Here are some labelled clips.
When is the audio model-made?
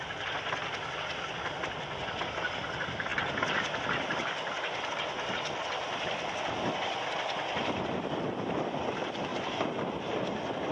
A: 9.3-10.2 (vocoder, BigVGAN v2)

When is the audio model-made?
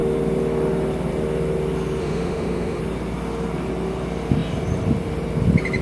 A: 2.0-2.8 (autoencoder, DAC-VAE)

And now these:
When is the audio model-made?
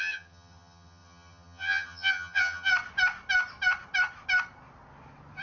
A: 0.0-2.7 (vocoder, HiFi-GAN)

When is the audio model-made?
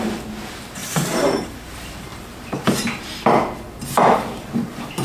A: 0.0-5.0 (vocoder, BigVGAN v2)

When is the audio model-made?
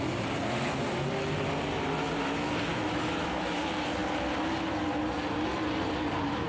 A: 2.7-3.6 (autoencoder, DAC-VAE)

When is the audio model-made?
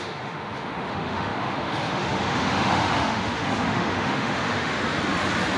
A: 0.0-4.7 (autoencoder, DAC-VAE)